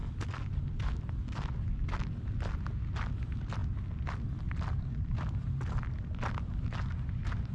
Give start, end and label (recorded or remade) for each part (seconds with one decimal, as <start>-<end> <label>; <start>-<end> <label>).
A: 0.0-7.5 recorded